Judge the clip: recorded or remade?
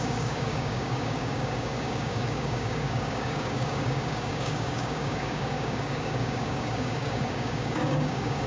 remade